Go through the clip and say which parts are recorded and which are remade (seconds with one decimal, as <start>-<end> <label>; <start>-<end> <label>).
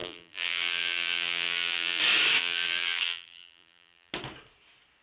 0.0-2.0 remade; 2.0-2.4 recorded; 2.4-4.1 remade; 4.1-5.0 recorded